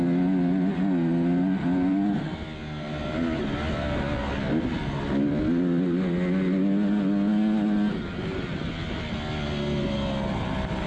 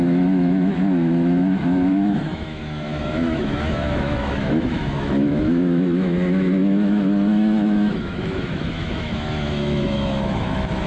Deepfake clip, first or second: second